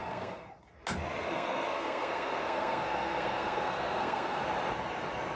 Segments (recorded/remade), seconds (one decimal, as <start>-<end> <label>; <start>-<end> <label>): 0.0-0.5 remade; 0.5-1.2 recorded; 1.2-4.4 remade; 4.4-5.4 recorded